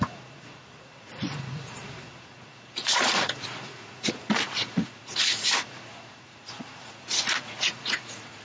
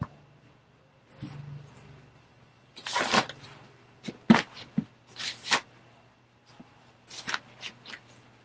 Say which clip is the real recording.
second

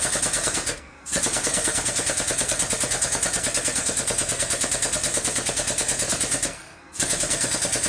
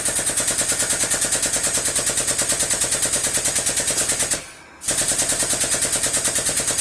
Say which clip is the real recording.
second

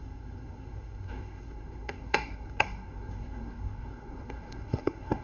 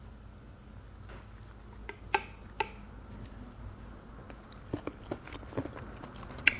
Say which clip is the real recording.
second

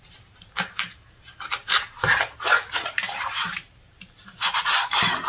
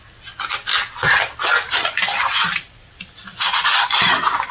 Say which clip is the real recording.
second